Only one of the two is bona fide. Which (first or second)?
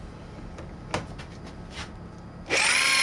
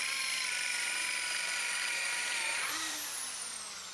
first